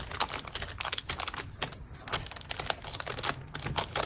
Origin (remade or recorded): recorded